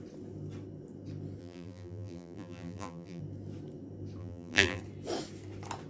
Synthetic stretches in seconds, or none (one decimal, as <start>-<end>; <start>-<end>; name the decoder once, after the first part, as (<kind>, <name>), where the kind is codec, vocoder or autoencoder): 1.4-3.2 (vocoder, BigVGAN v2); 4.2-4.8